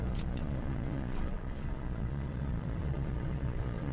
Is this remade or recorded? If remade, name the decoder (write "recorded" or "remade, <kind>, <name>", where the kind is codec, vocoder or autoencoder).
remade, vocoder, Vocos